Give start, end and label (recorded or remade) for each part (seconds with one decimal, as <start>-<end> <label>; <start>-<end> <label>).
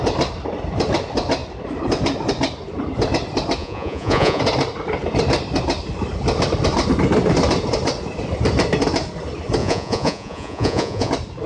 0.0-3.6 recorded; 3.6-4.4 remade; 4.4-9.6 recorded; 9.6-11.1 remade; 11.1-11.5 recorded